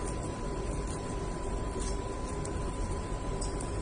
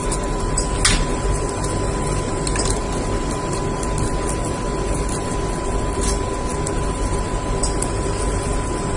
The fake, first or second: first